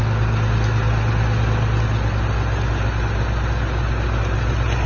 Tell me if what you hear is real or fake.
real